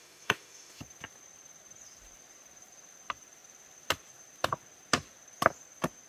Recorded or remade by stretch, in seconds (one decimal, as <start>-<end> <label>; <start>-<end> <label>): 0.0-0.8 remade; 0.8-6.1 recorded